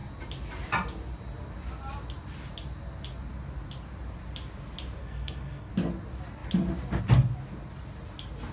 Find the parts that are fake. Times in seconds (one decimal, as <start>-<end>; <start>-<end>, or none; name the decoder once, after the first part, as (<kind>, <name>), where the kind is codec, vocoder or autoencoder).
5.0-5.7 (codec, SNAC)